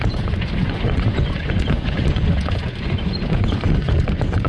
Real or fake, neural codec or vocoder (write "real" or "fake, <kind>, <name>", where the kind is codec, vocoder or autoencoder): fake, vocoder, Vocos